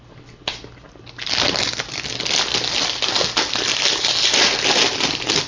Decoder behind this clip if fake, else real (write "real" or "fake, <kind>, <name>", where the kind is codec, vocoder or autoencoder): real